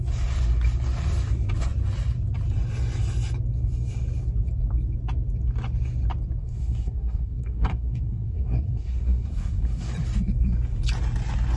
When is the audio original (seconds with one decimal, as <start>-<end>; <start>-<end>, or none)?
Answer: 0.0-6.4; 9.9-11.6